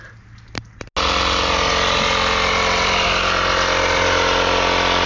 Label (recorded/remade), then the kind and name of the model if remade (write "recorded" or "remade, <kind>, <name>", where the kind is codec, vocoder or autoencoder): recorded